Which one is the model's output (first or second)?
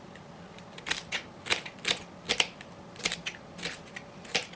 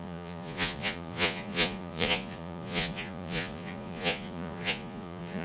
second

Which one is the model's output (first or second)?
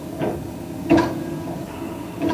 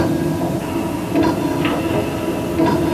first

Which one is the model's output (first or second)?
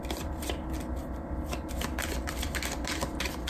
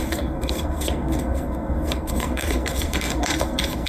second